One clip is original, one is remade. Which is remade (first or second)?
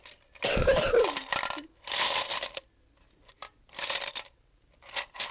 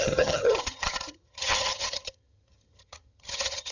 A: second